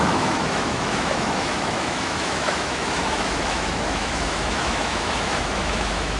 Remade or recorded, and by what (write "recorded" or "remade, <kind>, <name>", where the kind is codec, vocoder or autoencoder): remade, autoencoder, DAC-VAE